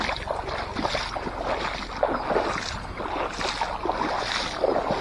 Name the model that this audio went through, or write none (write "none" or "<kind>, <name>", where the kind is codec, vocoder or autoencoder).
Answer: none